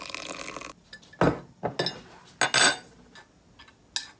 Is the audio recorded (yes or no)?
yes